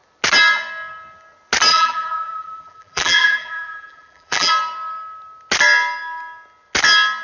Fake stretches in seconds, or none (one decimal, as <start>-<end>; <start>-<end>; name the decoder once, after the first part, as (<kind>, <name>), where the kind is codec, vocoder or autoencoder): 1.7-4.5 (vocoder, BigVGAN v2)